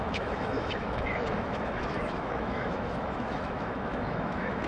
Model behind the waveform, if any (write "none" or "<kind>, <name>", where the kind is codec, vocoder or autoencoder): autoencoder, DAC-VAE